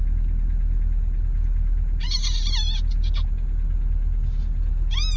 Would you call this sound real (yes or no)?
yes